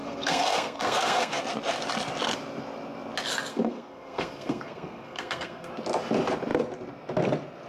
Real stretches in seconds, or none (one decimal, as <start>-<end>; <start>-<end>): 1.4-3.5; 5.7-7.7